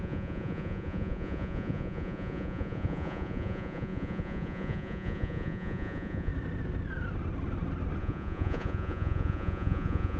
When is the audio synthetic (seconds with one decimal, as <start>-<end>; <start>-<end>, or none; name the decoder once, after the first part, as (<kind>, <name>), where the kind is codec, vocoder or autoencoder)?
0.0-6.3 (vocoder, Vocos); 8.0-10.2